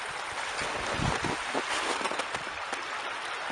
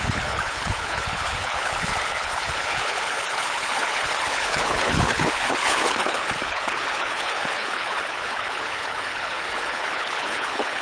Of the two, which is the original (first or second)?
first